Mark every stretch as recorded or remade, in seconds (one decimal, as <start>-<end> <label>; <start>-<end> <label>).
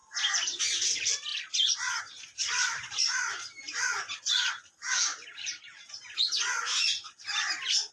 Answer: 0.0-2.6 recorded; 2.6-4.5 remade; 4.5-5.1 recorded; 5.1-5.9 remade; 5.9-7.9 recorded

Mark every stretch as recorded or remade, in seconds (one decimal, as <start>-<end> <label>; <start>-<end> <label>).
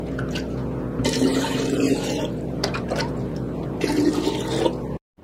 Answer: 0.0-1.3 recorded; 1.3-4.4 remade; 4.4-5.2 recorded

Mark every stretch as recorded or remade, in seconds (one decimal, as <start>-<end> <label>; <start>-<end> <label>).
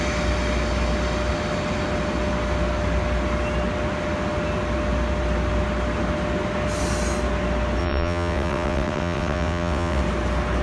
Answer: 0.0-7.8 recorded; 7.8-10.0 remade; 10.0-10.6 recorded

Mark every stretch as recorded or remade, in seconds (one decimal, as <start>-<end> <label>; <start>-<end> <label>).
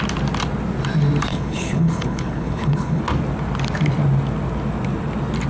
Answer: 0.0-1.3 recorded; 1.3-3.0 remade; 3.0-5.5 recorded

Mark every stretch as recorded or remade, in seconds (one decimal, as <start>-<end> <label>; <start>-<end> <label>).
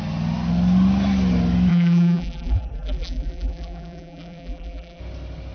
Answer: 0.0-1.7 recorded; 1.7-5.0 remade; 5.0-5.5 recorded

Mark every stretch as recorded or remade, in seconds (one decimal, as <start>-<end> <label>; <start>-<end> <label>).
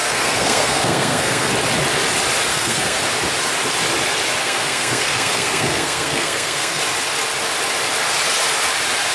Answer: 0.0-1.5 remade; 1.5-2.5 recorded; 2.5-3.0 remade; 3.0-4.4 recorded; 4.4-6.8 remade; 6.8-9.1 recorded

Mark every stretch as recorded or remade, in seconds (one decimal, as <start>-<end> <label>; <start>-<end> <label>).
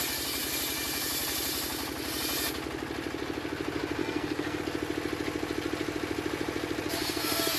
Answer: 0.0-4.0 recorded; 4.0-4.6 remade; 4.6-7.0 recorded; 7.0-7.6 remade